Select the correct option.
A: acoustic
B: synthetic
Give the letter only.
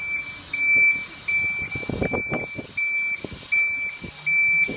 A